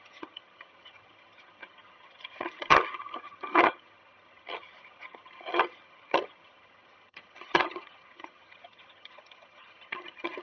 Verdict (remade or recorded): remade